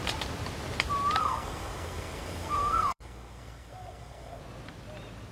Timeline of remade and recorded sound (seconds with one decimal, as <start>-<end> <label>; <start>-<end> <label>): 0.0-1.2 recorded; 1.2-4.4 remade; 4.4-5.3 recorded